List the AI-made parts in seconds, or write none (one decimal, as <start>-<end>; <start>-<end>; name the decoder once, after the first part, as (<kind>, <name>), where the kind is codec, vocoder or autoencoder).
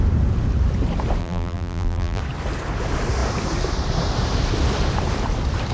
1.2-2.2 (vocoder, BigVGAN v2)